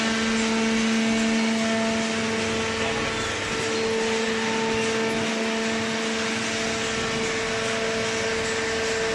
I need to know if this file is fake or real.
real